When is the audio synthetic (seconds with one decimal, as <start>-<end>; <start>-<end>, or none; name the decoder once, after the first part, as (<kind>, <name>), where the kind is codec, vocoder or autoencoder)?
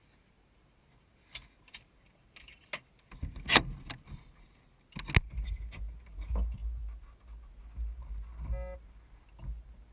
none